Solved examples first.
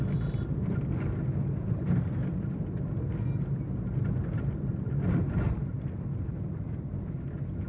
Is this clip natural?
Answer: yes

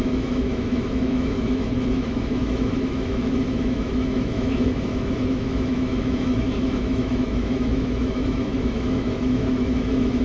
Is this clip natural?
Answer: no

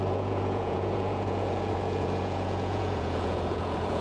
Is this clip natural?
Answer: no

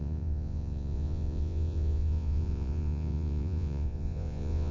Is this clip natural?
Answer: no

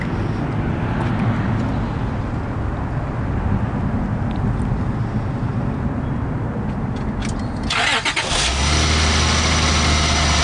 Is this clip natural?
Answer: yes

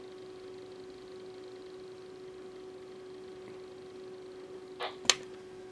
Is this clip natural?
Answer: yes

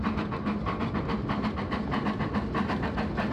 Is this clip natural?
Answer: yes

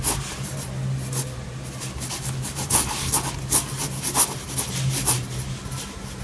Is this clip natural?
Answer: yes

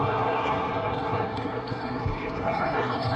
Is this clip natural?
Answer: no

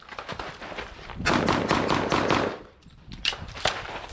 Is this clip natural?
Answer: no